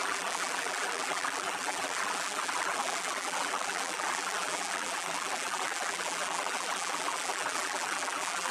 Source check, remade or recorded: remade